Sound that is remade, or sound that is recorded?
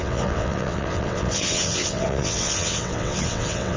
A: remade